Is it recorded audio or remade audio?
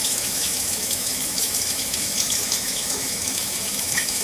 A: remade